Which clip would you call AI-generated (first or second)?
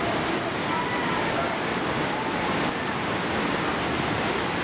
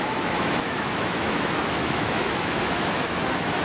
second